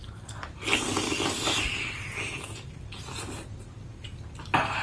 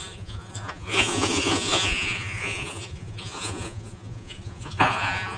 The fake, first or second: second